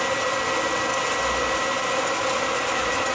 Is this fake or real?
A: real